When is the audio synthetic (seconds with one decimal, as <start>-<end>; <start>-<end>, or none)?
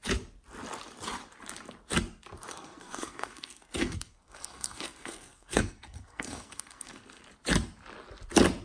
2.5-7.2